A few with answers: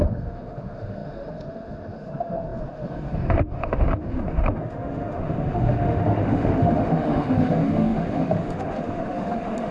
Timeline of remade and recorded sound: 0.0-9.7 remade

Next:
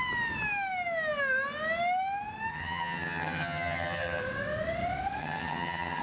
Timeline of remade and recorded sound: 0.0-2.5 recorded; 2.5-4.2 remade; 4.2-5.2 recorded; 5.2-6.0 remade

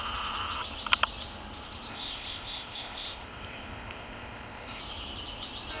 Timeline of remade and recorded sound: 0.0-1.9 recorded; 1.9-4.8 remade; 4.8-5.8 recorded

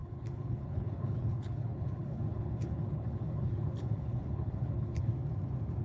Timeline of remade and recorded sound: 0.0-5.1 remade; 5.1-5.8 recorded

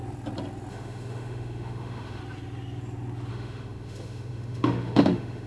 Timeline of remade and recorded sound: 0.0-0.7 recorded; 0.7-2.2 remade; 2.2-3.3 recorded; 3.3-5.5 remade

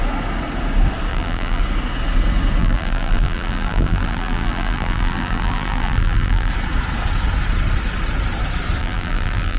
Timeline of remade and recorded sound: 0.0-1.1 recorded; 1.1-1.6 remade; 1.6-2.6 recorded; 2.6-6.5 remade; 6.5-8.8 recorded; 8.8-9.6 remade

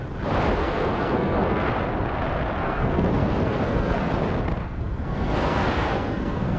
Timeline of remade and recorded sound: 0.0-0.6 recorded; 0.6-1.7 remade; 1.7-2.6 recorded; 2.6-4.1 remade; 4.1-4.6 recorded; 4.6-6.6 remade

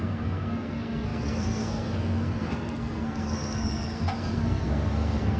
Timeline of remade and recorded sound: 0.0-5.4 remade